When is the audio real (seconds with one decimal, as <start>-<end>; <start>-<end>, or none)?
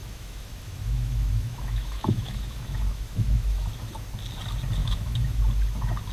3.7-4.8; 5.4-6.1